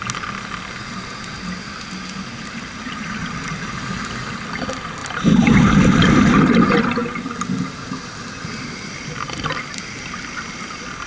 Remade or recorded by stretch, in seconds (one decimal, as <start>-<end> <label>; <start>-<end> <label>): 0.0-11.1 recorded